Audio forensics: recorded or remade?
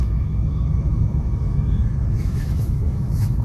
remade